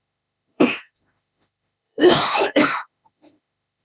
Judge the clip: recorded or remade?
remade